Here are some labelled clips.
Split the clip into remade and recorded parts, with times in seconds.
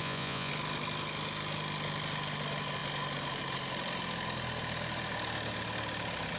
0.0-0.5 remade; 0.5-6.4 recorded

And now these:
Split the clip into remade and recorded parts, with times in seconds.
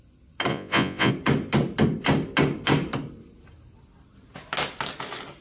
0.0-0.5 recorded; 0.5-1.1 remade; 1.1-5.4 recorded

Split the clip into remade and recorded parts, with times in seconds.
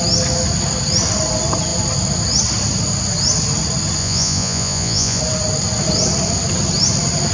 0.0-4.0 recorded; 4.0-5.2 remade; 5.2-7.3 recorded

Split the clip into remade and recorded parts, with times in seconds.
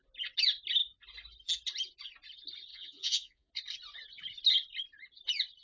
0.0-2.7 recorded; 2.7-3.5 remade; 3.5-5.6 recorded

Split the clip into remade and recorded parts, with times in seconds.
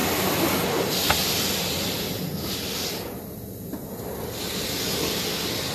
0.0-5.7 recorded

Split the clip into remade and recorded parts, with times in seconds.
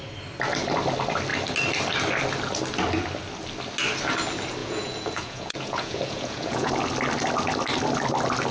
0.0-4.6 recorded; 4.6-6.7 remade; 6.7-8.5 recorded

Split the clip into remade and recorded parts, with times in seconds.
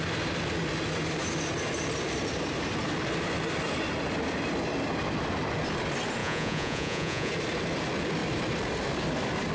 0.0-6.2 recorded; 6.2-7.3 remade; 7.3-9.5 recorded